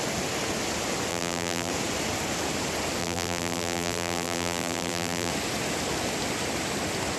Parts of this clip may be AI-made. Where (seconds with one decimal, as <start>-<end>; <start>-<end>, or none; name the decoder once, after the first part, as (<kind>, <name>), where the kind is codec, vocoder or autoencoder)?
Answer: 1.1-1.7 (vocoder, BigVGAN v2); 3.0-5.3